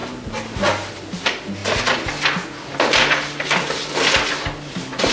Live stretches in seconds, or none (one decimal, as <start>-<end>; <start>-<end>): 0.0-5.1